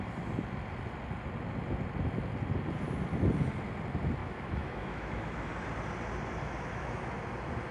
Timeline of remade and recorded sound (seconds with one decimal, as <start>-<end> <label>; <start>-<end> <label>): 0.0-4.2 recorded; 4.2-5.5 remade; 5.5-6.4 recorded; 6.4-7.2 remade; 7.2-7.7 recorded